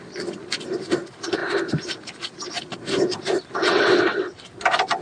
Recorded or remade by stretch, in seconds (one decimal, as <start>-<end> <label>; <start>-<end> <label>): 0.0-3.6 recorded; 3.6-4.5 remade; 4.5-5.0 recorded